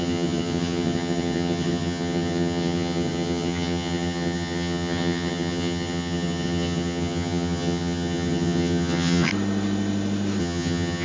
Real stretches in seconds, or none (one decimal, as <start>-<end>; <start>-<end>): 9.3-10.4